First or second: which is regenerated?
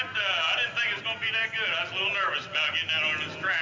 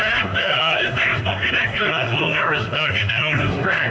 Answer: second